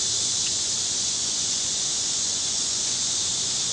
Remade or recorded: remade